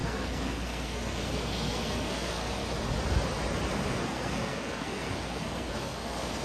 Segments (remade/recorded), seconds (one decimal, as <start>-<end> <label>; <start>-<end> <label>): 0.0-2.6 remade; 2.6-3.9 recorded; 3.9-6.4 remade